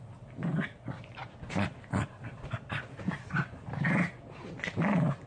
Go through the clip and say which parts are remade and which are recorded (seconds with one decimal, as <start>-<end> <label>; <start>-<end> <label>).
0.0-5.3 recorded

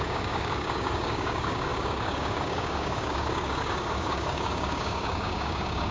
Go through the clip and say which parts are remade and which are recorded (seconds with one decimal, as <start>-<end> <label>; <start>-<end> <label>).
0.0-5.9 remade

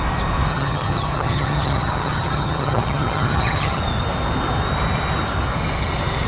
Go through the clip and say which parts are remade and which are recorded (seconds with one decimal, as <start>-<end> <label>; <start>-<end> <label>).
0.0-0.5 recorded; 0.5-3.8 remade; 3.8-6.3 recorded

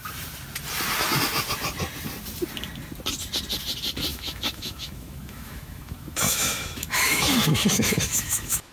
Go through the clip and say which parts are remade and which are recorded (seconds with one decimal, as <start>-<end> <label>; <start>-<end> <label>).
0.0-4.1 recorded; 4.1-8.7 remade

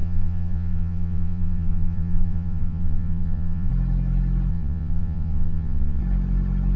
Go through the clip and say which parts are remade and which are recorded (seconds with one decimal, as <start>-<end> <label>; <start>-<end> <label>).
0.0-3.7 remade; 3.7-4.5 recorded; 4.5-6.0 remade; 6.0-6.8 recorded